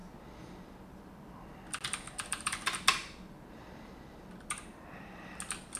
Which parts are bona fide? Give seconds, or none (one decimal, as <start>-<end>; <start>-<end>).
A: 0.0-5.8